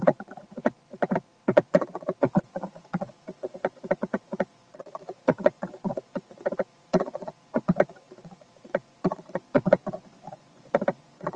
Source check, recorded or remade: remade